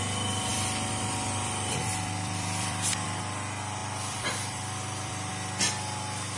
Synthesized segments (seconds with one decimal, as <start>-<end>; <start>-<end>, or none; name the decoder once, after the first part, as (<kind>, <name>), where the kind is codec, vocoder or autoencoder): 0.5-3.2 (vocoder, BigVGAN v2); 3.8-5.3